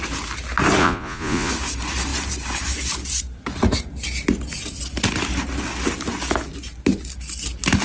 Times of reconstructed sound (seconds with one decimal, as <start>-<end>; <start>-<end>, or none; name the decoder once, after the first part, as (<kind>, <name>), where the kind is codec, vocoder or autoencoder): 0.8-1.5 (vocoder, Vocos)